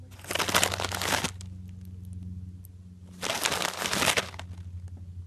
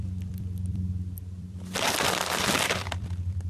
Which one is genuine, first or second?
first